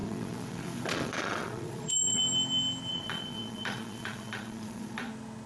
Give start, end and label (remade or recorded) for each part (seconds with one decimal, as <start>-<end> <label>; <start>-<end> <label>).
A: 0.0-2.2 remade; 2.2-2.9 recorded; 2.9-5.1 remade; 5.1-5.5 recorded